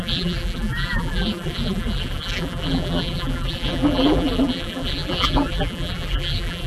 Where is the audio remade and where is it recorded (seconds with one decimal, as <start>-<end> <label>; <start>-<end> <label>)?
0.0-6.7 remade